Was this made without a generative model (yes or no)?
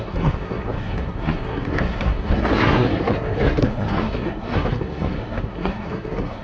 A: no